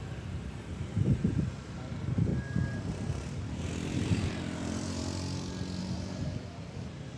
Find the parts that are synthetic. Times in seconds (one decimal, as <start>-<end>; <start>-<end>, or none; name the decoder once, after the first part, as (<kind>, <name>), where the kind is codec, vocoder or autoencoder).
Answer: 0.0-2.3 (vocoder, BigVGAN v2); 2.9-5.0; 5.8-7.2